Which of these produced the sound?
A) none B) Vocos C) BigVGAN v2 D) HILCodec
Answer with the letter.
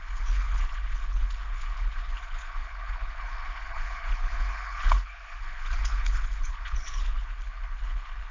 D